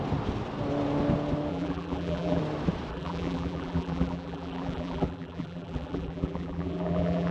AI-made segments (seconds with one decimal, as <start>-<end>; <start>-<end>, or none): 1.5-2.4; 2.9-7.3